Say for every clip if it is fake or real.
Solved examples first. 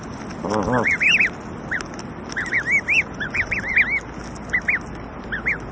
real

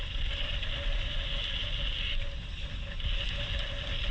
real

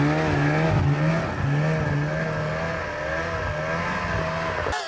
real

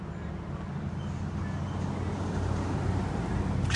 real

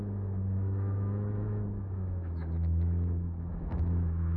fake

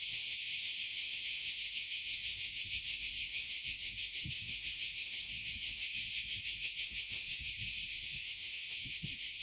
fake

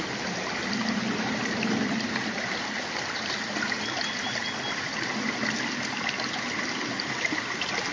real